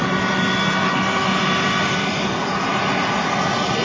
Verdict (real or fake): real